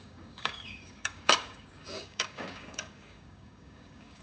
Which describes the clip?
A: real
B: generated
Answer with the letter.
B